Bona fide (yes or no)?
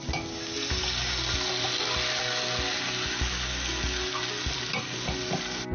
yes